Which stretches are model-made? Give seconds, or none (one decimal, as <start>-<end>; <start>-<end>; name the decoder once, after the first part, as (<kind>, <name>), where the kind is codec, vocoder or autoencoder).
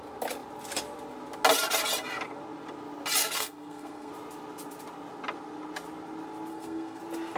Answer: 3.2-4.1 (codec, SNAC); 6.5-7.0